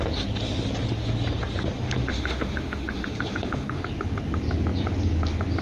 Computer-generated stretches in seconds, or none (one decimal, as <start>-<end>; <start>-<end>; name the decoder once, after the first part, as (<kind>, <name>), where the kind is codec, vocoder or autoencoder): 2.1-3.8 (autoencoder, DAC-VAE)